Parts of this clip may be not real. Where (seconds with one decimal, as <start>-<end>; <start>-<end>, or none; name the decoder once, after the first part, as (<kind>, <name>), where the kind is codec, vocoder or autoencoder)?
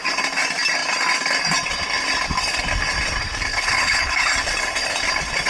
3.5-4.3 (codec, HILCodec)